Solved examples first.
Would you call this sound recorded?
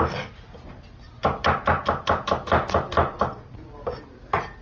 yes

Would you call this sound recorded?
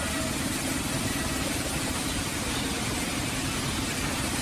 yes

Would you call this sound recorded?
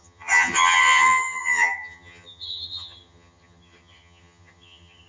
no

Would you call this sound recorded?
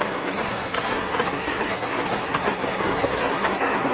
no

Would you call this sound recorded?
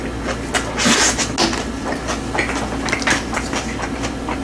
yes